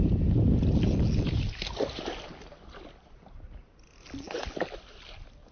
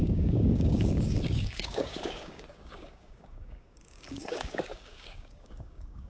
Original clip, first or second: first